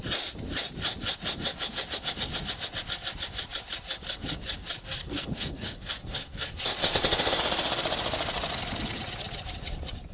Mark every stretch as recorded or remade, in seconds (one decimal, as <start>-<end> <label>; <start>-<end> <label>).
0.0-5.0 recorded; 5.0-6.5 remade; 6.5-10.1 recorded